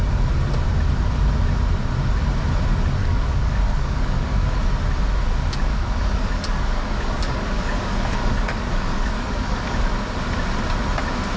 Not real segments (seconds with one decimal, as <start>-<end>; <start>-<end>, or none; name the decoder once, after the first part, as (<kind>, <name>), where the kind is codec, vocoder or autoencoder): 3.0-4.6 (codec, DAC); 5.7-9.8